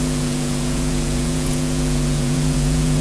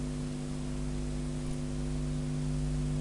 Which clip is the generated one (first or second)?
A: first